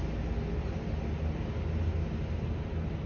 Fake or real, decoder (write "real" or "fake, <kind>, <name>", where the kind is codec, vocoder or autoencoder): real